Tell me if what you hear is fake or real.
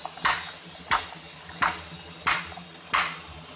real